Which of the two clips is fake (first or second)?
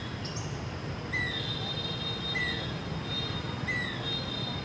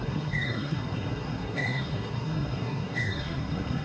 second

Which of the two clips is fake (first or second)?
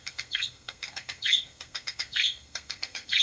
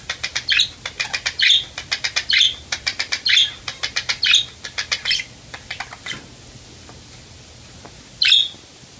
first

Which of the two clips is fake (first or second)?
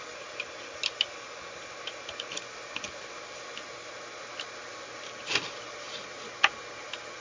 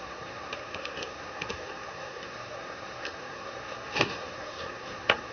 second